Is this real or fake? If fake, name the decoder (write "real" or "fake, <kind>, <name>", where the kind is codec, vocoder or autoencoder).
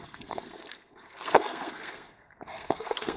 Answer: fake, codec, SNAC